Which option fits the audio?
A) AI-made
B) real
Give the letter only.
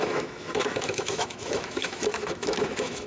A